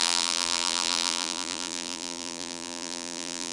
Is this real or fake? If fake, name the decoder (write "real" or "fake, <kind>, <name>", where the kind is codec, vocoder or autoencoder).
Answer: fake, vocoder, BigVGAN v2